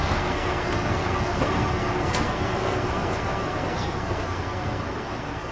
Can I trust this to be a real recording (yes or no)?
no